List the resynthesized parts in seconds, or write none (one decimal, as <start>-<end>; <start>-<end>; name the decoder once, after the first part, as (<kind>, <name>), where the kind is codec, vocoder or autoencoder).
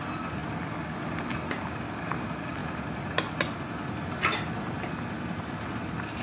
none